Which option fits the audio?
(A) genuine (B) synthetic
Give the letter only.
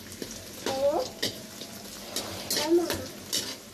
A